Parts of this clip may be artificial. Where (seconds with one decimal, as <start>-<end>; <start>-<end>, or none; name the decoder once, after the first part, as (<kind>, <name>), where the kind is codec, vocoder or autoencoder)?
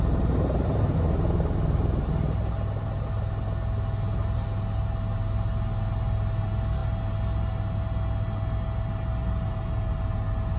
none